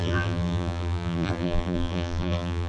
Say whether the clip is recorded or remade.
remade